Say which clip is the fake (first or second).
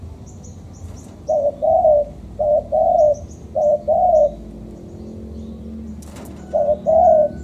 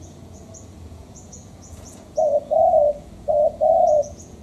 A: second